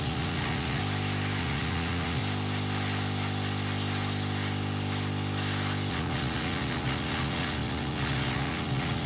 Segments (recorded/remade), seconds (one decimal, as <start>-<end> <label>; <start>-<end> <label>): 0.0-0.8 remade; 0.8-1.4 recorded; 1.4-2.2 remade; 2.2-5.9 recorded; 5.9-9.1 remade